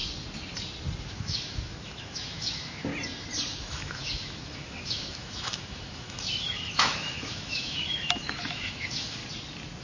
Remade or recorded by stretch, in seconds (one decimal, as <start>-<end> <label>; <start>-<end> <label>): 0.0-1.0 recorded; 1.0-2.9 remade; 2.9-3.6 recorded; 3.6-9.2 remade; 9.2-9.8 recorded